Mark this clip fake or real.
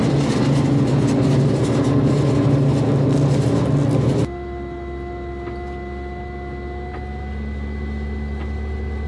real